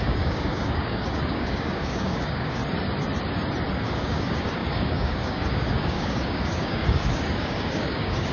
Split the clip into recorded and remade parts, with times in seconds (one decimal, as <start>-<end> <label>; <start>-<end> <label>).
0.0-2.6 remade; 2.6-3.7 recorded; 3.7-8.3 remade